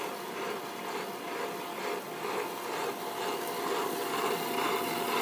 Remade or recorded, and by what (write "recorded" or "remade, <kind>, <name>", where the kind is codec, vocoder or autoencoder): recorded